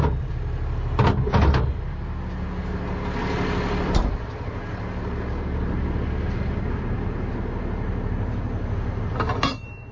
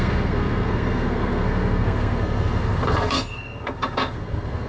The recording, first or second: first